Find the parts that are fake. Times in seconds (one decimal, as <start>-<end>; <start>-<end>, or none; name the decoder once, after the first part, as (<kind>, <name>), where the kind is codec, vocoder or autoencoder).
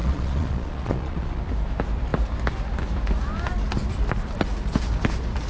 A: 0.0-1.4 (vocoder, Vocos)